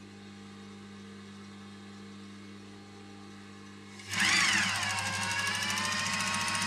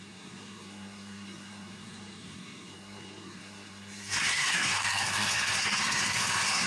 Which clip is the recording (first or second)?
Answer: first